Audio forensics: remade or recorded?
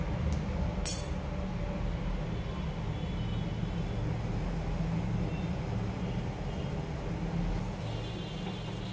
recorded